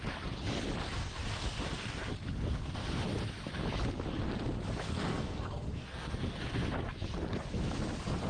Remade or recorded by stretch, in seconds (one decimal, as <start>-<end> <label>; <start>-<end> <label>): 0.0-5.1 recorded; 5.1-6.4 remade; 6.4-8.3 recorded